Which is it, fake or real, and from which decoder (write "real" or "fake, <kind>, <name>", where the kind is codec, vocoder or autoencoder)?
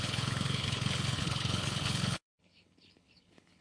fake, codec, HILCodec